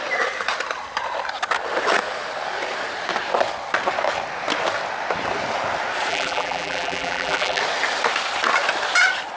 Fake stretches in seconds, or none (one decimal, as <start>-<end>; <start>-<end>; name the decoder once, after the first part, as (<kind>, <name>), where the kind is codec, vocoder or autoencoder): 6.1-7.6 (vocoder, BigVGAN v2)